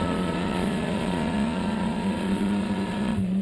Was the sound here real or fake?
fake